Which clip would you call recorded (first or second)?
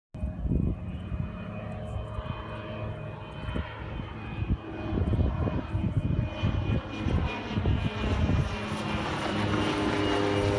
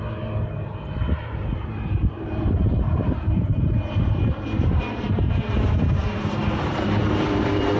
first